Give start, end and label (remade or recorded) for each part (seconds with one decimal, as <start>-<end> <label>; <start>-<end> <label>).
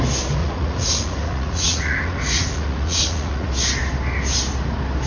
0.0-0.4 recorded; 0.4-3.5 remade; 3.5-5.1 recorded